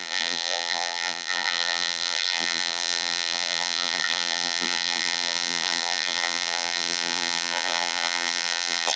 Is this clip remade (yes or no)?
yes